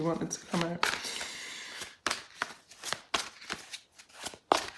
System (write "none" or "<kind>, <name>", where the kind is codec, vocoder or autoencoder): none